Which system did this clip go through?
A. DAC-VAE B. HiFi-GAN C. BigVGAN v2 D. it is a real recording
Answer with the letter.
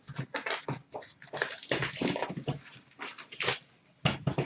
D